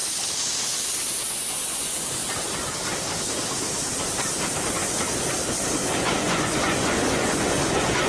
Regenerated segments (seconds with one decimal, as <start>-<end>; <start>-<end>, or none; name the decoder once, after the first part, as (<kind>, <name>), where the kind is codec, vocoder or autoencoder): 1.3-2.2 (vocoder, Vocos); 6.0-8.1